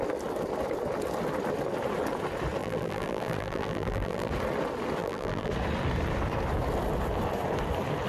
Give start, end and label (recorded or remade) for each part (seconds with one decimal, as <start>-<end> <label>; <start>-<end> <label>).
0.0-2.6 recorded; 2.6-4.3 remade; 4.3-5.0 recorded; 5.0-5.5 remade; 5.5-8.1 recorded